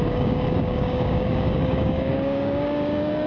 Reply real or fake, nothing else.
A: fake